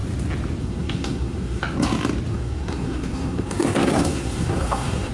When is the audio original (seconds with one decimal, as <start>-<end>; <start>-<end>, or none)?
0.0-0.6; 1.6-2.3